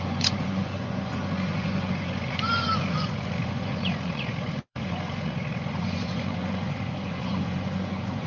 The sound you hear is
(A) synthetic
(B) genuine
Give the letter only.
A